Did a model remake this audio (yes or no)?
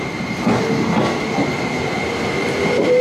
no